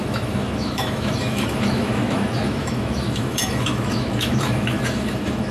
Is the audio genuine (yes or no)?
no